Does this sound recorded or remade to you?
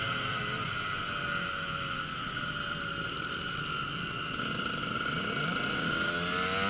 recorded